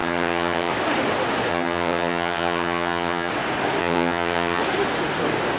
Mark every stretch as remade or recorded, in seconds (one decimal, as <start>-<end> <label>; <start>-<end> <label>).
0.0-0.7 remade; 0.7-1.5 recorded; 1.5-3.3 remade; 3.3-3.8 recorded; 3.8-4.6 remade; 4.6-5.6 recorded